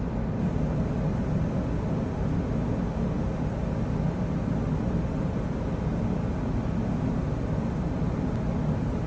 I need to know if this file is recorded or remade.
recorded